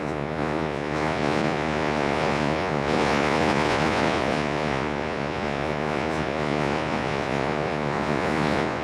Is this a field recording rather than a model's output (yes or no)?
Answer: no